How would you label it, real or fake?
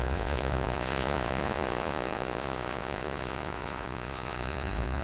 fake